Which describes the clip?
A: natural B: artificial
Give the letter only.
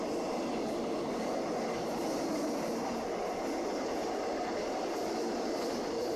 A